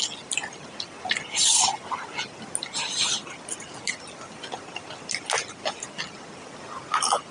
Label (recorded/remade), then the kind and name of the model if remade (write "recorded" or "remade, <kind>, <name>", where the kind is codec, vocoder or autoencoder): recorded